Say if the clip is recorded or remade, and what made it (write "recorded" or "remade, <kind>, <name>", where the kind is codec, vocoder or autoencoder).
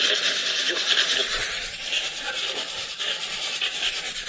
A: remade, vocoder, BigVGAN v2